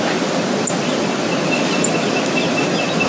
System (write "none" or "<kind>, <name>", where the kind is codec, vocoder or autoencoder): none